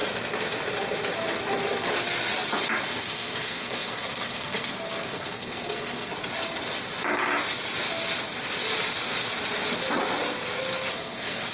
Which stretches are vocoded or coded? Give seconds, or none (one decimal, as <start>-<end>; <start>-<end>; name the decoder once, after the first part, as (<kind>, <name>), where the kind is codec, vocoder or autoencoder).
3.0-6.1 (codec, SNAC); 10.9-11.5